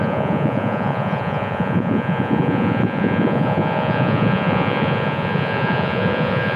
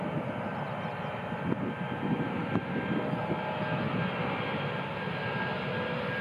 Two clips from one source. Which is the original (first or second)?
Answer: second